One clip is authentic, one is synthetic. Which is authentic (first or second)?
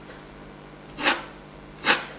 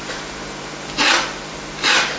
first